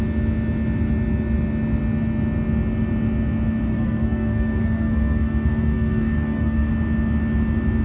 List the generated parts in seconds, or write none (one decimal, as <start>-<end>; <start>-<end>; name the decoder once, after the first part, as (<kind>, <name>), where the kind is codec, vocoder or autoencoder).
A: 3.7-6.7 (codec, SNAC)